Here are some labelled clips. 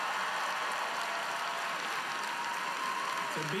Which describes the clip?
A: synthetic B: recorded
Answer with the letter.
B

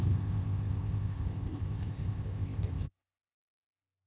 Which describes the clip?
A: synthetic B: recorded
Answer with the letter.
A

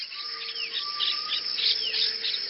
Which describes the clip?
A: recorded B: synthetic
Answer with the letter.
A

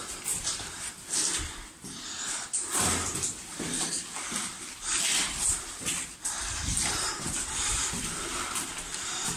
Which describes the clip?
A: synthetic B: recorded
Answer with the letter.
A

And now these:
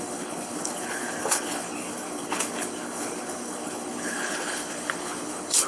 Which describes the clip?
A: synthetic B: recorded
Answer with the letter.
A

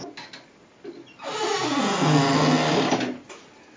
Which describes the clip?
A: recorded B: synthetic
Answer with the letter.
A